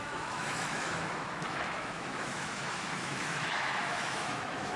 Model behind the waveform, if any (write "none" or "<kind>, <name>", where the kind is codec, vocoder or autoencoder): autoencoder, DAC-VAE